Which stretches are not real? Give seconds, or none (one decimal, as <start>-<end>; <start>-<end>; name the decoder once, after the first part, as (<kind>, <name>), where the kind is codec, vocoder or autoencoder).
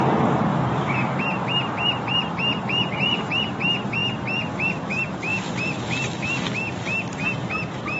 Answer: 0.5-3.4 (vocoder, BigVGAN v2)